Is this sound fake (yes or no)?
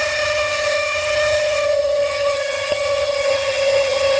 yes